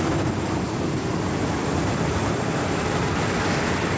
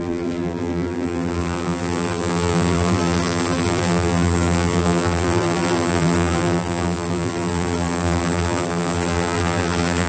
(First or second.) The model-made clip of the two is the second